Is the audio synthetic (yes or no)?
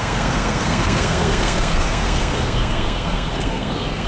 yes